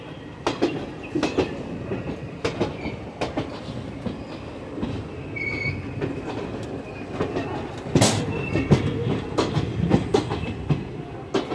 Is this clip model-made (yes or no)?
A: no